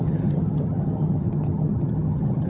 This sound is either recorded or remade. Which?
remade